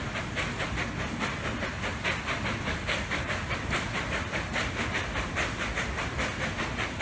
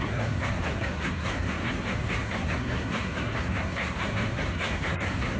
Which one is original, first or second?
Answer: first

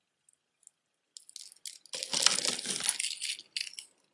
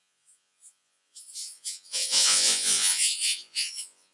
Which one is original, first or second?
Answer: first